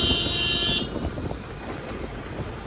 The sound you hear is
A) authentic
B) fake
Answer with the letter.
A